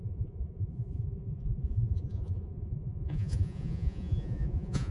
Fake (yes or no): yes